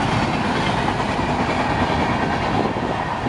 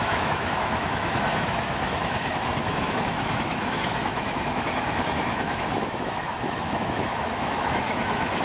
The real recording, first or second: first